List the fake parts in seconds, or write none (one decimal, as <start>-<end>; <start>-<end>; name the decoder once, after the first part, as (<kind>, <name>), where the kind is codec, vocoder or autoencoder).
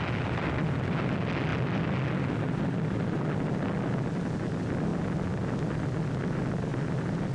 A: none